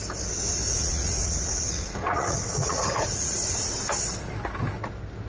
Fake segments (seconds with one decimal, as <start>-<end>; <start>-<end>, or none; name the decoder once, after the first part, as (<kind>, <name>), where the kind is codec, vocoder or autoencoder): 0.5-3.7 (vocoder, Vocos)